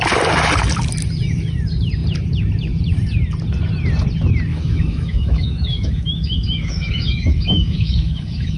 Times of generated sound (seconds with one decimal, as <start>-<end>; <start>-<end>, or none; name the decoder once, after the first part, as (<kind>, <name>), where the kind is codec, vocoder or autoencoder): 4.5-8.6 (autoencoder, DAC-VAE)